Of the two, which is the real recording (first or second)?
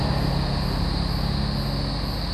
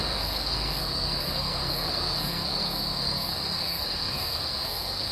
first